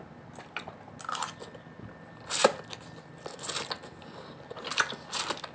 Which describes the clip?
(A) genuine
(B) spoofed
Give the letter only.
A